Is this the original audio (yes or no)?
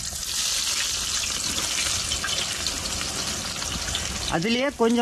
yes